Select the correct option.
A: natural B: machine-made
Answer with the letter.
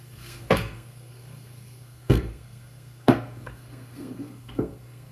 B